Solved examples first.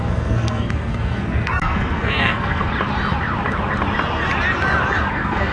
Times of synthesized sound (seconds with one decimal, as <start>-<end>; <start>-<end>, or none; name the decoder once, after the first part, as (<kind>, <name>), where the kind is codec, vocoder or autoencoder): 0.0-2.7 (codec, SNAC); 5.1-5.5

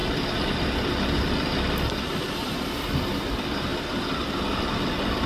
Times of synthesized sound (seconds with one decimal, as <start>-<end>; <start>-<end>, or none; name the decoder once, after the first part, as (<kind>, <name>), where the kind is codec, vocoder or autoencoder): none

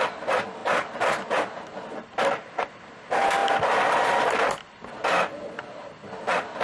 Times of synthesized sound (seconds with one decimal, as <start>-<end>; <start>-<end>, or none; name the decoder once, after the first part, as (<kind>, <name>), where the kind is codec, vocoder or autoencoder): none

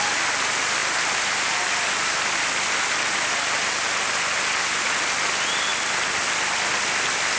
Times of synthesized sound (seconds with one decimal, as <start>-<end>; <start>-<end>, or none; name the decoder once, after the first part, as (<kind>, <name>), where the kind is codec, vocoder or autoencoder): none

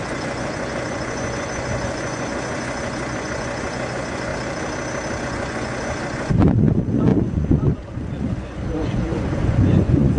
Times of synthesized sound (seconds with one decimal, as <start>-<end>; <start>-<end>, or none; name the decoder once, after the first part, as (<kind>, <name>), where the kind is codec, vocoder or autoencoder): 0.0-4.3 (vocoder, Vocos); 5.2-10.2

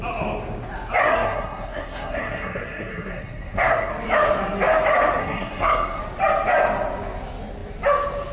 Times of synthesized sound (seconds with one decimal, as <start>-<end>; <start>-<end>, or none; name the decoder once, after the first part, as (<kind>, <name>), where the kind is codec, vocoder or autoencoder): 1.0-3.9 (codec, SNAC); 5.2-6.0